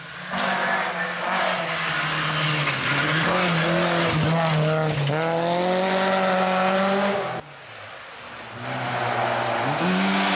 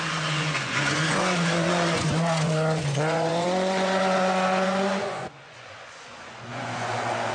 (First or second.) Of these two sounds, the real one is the first